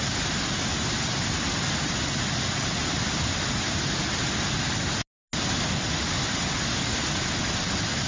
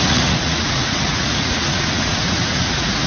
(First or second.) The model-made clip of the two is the second